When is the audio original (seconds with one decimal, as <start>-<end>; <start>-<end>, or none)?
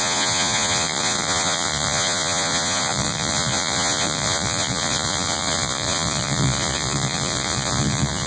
none